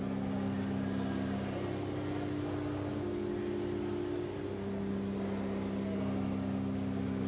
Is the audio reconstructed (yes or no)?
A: no